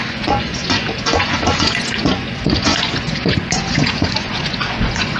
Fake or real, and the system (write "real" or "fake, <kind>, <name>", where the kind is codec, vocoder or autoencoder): fake, vocoder, Vocos